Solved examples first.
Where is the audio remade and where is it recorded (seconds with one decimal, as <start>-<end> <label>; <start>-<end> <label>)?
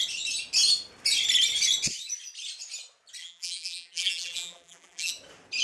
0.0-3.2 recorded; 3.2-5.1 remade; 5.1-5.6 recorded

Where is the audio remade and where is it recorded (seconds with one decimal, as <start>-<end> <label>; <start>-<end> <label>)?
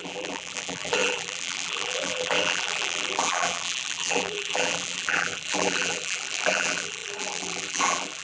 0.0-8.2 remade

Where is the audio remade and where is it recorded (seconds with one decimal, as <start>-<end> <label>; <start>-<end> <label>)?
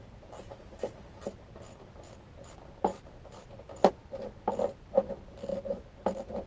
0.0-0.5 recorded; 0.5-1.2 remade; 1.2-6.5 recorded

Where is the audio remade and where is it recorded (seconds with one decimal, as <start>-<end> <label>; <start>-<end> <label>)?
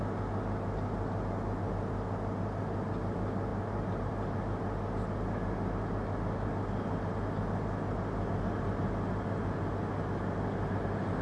0.0-3.5 recorded; 3.5-4.1 remade; 4.1-11.2 recorded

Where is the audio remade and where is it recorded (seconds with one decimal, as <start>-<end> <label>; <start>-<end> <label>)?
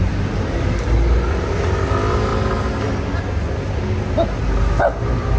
0.0-2.3 remade; 2.3-5.4 recorded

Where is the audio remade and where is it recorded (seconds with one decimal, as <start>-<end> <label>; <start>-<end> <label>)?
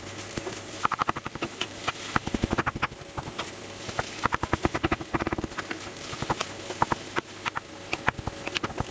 0.0-1.0 recorded; 1.0-1.8 remade; 1.8-8.9 recorded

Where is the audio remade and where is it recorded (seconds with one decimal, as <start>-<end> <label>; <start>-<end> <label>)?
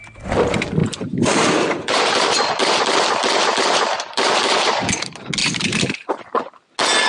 0.0-0.8 recorded; 0.8-2.7 remade; 2.7-5.4 recorded; 5.4-6.2 remade; 6.2-7.1 recorded